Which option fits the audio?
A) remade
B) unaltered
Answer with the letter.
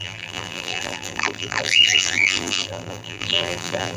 A